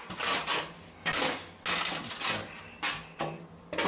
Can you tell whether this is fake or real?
real